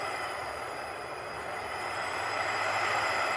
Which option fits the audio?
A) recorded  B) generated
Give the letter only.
B